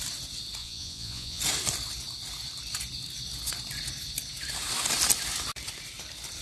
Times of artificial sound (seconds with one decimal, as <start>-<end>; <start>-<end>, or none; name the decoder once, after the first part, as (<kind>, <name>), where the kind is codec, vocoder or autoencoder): 0.6-1.4 (vocoder, Vocos)